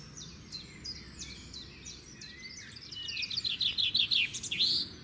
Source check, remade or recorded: recorded